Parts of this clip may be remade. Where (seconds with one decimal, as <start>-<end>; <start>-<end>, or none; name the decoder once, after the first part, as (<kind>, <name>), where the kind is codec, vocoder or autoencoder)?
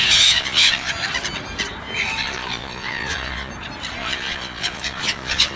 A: 0.0-0.9 (vocoder, Vocos); 2.2-3.5; 4.0-5.6